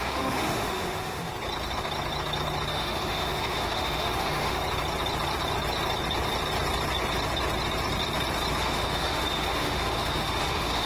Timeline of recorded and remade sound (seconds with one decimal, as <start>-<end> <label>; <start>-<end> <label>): 0.0-1.3 remade; 1.3-2.7 recorded; 2.7-4.6 remade; 4.6-8.6 recorded; 8.6-10.9 remade

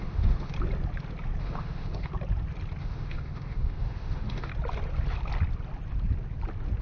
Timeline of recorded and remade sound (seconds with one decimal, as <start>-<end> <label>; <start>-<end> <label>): 0.0-0.5 remade; 0.5-1.4 recorded; 1.4-2.1 remade; 2.1-2.8 recorded; 2.8-4.5 remade; 4.5-6.8 recorded

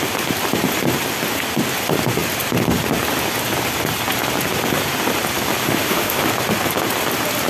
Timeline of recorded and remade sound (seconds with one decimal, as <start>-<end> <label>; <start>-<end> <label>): 0.0-5.6 recorded; 5.6-6.2 remade; 6.2-7.5 recorded